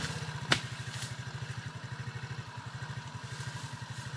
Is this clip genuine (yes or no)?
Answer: yes